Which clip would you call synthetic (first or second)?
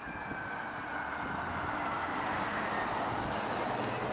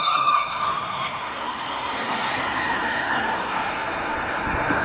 second